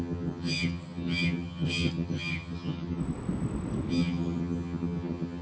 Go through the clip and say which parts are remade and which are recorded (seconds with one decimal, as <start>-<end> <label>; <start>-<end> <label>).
0.0-3.0 remade; 3.0-3.9 recorded; 3.9-5.4 remade